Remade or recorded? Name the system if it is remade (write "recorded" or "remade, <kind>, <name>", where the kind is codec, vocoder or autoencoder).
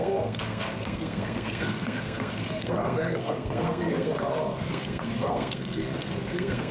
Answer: remade, codec, SNAC